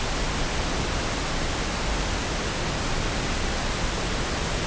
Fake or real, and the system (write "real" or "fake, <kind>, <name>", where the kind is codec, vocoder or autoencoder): real